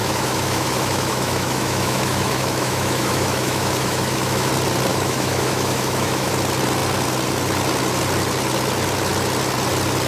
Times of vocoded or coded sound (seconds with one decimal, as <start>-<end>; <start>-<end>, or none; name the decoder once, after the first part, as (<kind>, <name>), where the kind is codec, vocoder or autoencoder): 0.0-4.5 (autoencoder, DAC-VAE); 4.9-6.3